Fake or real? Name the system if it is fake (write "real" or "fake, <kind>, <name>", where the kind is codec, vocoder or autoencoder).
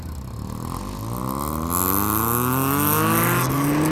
real